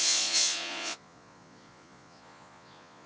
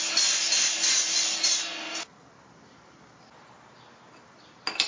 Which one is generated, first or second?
first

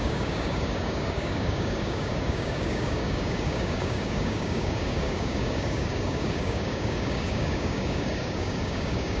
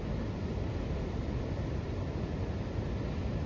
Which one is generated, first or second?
first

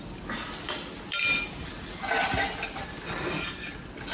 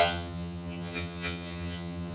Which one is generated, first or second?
second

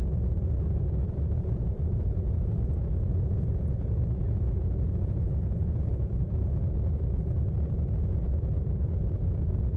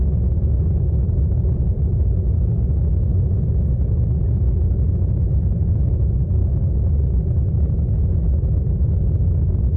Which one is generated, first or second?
first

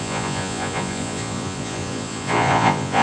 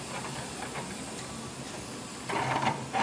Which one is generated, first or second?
first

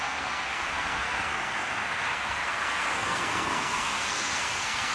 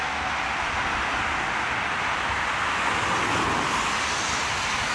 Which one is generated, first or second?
first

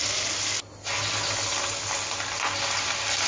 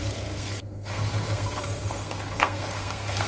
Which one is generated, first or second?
second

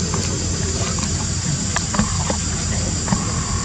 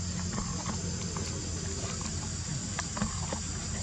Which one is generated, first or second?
first